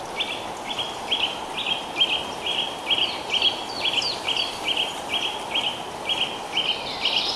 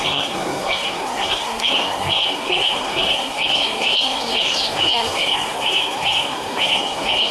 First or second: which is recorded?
first